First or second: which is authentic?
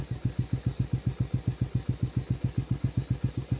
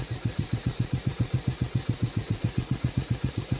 first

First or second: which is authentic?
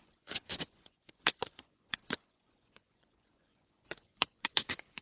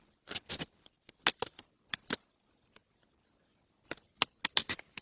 second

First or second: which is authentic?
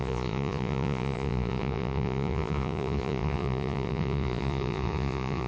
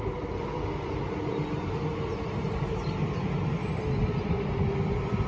second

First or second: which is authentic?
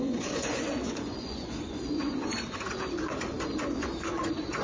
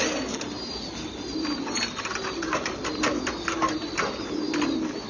second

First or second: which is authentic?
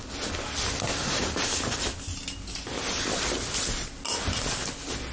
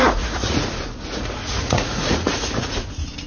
first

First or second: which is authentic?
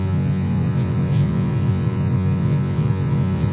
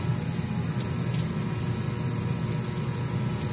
second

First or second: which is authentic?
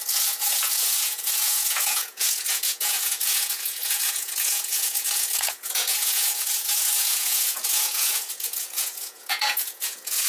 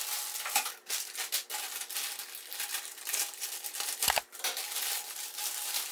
second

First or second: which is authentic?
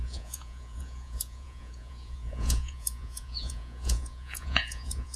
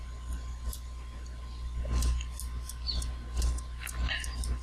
second